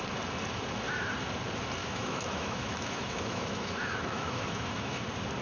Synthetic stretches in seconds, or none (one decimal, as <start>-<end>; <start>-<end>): 1.8-5.0